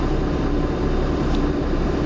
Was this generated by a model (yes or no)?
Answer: no